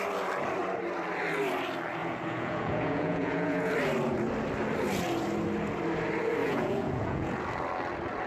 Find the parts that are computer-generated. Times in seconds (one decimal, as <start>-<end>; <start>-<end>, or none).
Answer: 2.0-3.7; 6.4-7.4